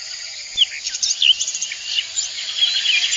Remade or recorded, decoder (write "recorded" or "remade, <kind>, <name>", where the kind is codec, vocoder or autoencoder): recorded